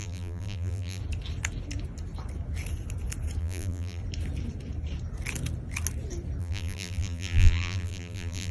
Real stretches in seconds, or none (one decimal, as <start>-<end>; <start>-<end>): 1.0-3.4; 4.0-6.4